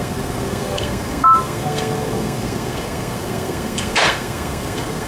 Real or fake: fake